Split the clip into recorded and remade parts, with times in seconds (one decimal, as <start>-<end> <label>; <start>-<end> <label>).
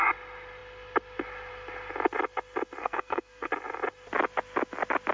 0.0-2.8 recorded; 2.8-3.5 remade; 3.5-5.1 recorded